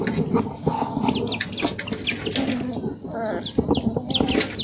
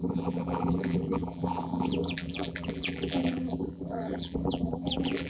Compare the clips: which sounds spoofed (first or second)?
second